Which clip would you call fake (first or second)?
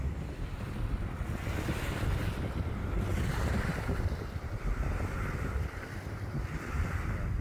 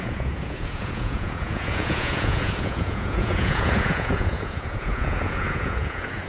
second